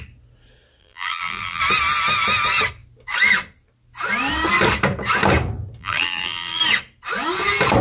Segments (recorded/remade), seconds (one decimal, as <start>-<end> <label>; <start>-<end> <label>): 0.0-0.8 recorded; 0.8-1.6 remade; 1.6-5.8 recorded; 5.8-6.6 remade; 6.6-7.8 recorded